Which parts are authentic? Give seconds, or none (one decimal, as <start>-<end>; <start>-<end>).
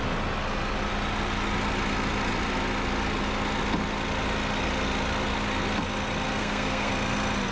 0.0-6.4; 6.9-7.5